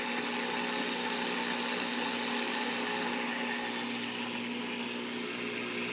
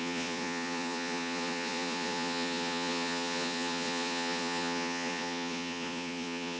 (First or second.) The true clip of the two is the first